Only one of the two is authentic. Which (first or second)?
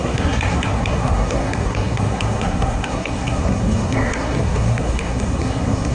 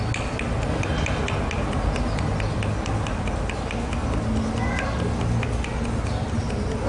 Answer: second